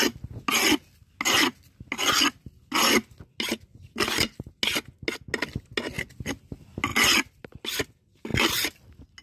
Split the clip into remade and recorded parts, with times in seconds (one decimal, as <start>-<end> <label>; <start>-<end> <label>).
0.0-9.2 recorded